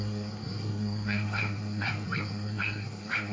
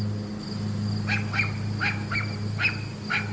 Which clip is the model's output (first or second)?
first